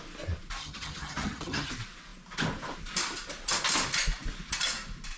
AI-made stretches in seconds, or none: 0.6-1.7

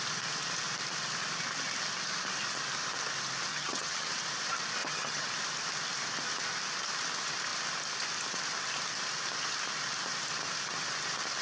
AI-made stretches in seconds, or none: 3.5-4.1; 4.8-5.3

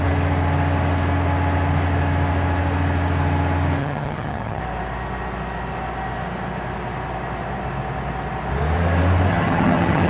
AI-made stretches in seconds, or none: 3.8-4.6; 9.3-10.1

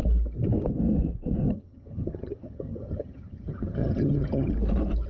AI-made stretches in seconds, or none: 1.4-4.5